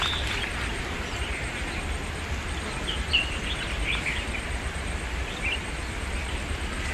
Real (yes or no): yes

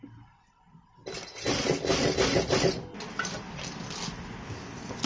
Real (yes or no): yes